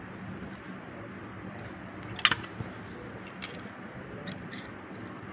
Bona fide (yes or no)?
yes